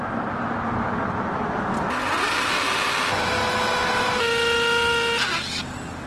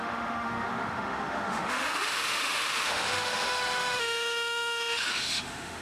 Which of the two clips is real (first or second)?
first